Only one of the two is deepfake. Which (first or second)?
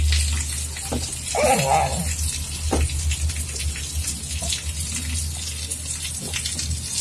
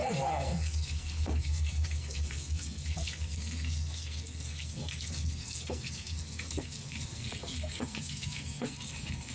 second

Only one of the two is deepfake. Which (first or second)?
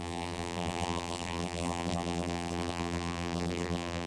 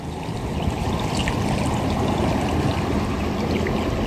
first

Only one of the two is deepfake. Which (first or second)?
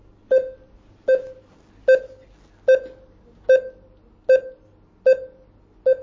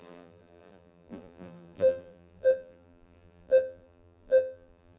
second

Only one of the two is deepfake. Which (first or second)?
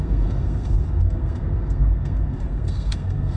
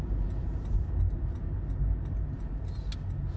first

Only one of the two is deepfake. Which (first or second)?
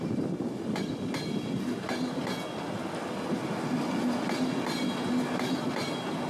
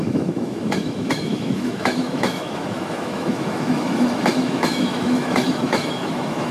second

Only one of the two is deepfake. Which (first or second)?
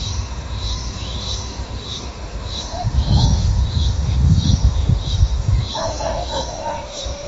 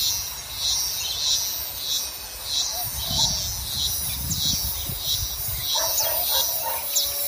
first